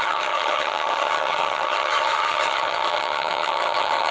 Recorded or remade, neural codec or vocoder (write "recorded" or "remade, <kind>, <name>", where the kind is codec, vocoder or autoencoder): remade, vocoder, HiFi-GAN